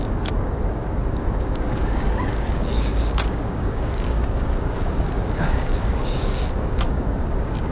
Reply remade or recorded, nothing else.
remade